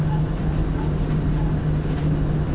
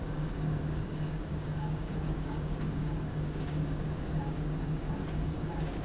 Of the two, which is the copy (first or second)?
second